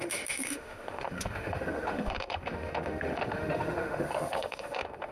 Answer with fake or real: fake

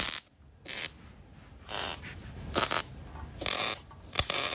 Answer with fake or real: real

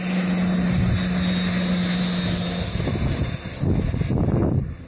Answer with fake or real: real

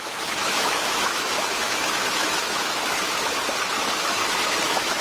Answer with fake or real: fake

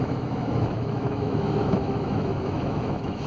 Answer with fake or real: fake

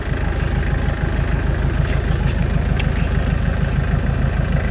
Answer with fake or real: real